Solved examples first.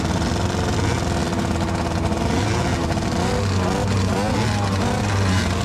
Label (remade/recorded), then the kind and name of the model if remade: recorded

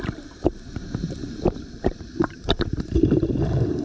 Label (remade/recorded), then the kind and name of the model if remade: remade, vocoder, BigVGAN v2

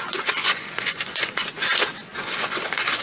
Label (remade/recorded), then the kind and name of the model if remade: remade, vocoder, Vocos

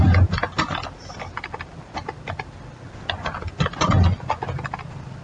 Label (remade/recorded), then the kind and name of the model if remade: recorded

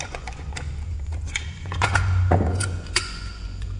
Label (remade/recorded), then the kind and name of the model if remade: remade, vocoder, Vocos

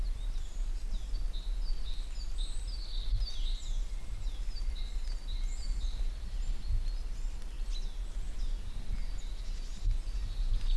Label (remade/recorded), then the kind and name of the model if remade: recorded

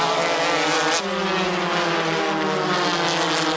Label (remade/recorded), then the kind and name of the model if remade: recorded